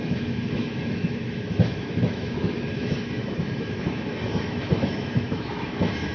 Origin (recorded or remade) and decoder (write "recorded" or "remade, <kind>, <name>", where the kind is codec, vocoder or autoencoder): remade, autoencoder, DAC-VAE